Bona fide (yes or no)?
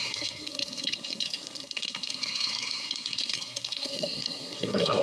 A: no